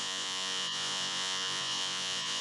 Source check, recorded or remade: remade